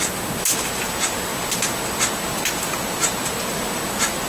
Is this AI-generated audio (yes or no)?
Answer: no